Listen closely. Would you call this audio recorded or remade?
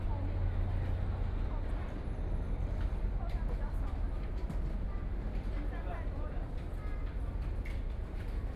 recorded